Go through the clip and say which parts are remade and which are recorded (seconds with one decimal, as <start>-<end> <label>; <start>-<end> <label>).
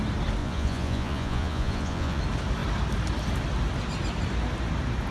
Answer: 0.0-0.4 recorded; 0.4-2.2 remade; 2.2-5.1 recorded